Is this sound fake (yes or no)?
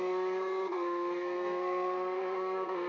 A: yes